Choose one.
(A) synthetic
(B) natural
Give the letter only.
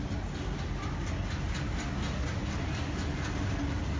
B